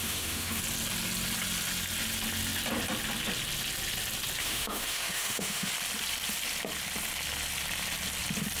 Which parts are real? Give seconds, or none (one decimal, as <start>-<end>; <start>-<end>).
0.6-4.4; 5.7-8.6